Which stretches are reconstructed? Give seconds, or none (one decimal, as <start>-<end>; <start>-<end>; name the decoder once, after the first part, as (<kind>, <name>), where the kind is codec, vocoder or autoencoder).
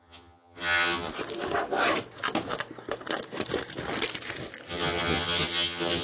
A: 0.0-1.1 (vocoder, HiFi-GAN); 4.7-6.0